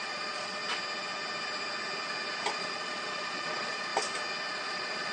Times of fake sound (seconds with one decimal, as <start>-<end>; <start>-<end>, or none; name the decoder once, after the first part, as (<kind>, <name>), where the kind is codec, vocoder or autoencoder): 0.0-0.6 (vocoder, Vocos); 2.5-3.9; 4.5-5.1